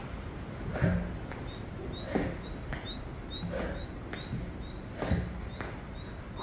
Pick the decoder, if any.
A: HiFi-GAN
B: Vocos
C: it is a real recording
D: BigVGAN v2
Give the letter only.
C